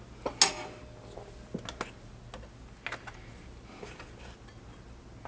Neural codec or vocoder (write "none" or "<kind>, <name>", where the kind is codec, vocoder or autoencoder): none